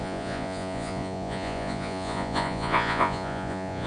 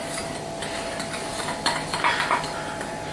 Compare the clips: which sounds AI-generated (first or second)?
first